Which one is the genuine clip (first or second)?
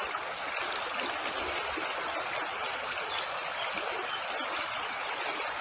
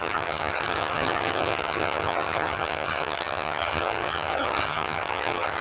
first